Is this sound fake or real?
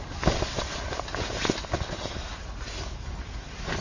real